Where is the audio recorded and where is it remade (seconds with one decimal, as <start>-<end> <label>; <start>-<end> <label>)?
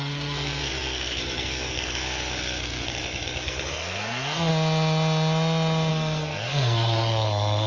0.0-4.5 remade; 4.5-5.9 recorded; 5.9-7.7 remade